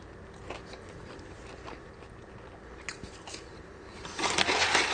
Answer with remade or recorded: recorded